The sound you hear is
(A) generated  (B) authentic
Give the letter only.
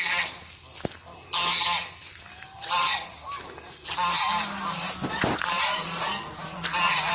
B